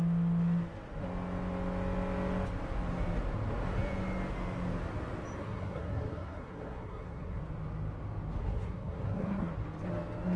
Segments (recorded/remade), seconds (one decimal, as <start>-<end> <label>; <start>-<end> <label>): 0.0-5.4 recorded; 5.4-7.4 remade; 7.4-8.4 recorded; 8.4-9.5 remade; 9.5-10.4 recorded